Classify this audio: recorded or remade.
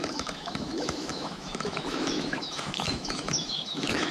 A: remade